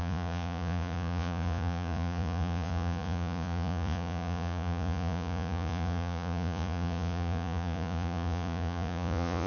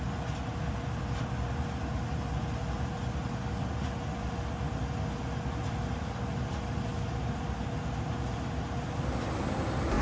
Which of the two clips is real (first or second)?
second